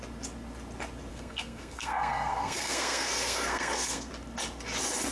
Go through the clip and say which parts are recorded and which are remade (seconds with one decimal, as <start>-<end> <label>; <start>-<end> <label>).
0.0-1.1 recorded; 1.1-4.1 remade; 4.1-5.1 recorded